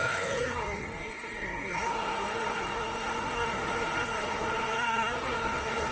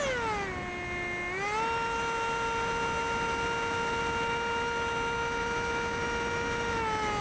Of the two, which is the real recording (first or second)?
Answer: second